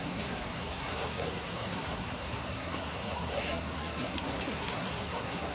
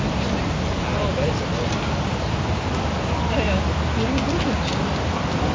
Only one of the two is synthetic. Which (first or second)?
first